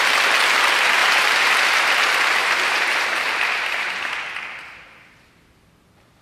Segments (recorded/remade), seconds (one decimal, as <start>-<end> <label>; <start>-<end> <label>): 0.0-1.0 recorded; 1.0-1.8 remade; 1.8-2.4 recorded; 2.4-4.3 remade; 4.3-6.2 recorded